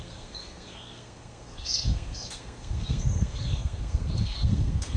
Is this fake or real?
fake